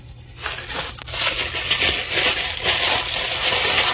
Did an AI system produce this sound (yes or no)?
no